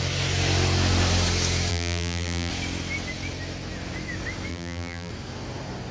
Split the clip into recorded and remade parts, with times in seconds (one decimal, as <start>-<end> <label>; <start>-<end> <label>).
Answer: 0.0-1.7 recorded; 1.7-2.5 remade; 2.5-4.5 recorded; 4.5-5.1 remade; 5.1-5.9 recorded